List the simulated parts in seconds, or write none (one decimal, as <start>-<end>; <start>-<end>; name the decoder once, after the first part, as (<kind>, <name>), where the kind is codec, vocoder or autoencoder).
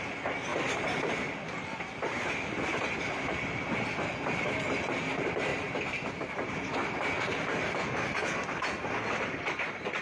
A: none